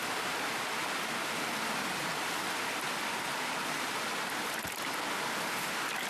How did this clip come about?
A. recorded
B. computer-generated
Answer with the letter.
A